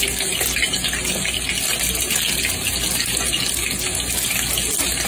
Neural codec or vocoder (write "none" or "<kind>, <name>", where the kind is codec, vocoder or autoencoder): none